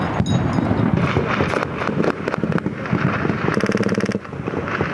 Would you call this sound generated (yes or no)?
no